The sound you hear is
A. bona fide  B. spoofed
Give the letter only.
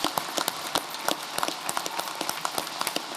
A